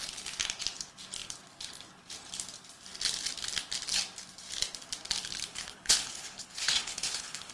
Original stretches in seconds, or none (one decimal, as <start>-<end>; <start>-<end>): 0.0-5.5